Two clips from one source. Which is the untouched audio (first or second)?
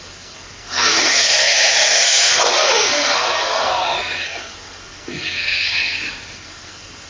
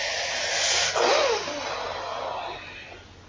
second